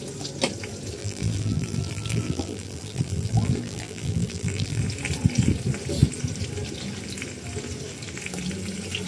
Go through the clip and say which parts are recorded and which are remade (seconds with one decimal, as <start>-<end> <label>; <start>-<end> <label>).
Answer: 0.0-1.0 recorded; 1.0-4.8 remade; 4.8-9.1 recorded